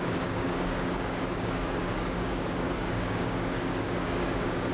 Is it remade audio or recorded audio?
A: remade